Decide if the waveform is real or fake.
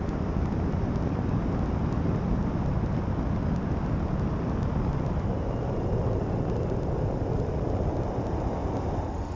real